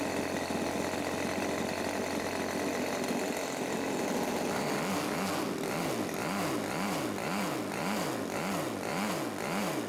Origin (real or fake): real